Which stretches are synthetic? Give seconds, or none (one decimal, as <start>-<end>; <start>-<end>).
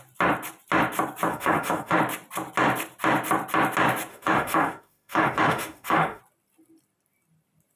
1.3-2.0; 4.1-6.2